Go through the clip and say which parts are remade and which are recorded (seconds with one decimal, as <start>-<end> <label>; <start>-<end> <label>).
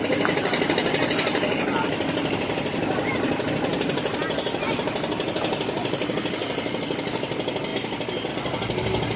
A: 0.0-9.2 recorded